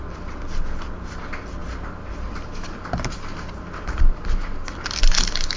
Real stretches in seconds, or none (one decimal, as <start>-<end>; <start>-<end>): 0.0-5.6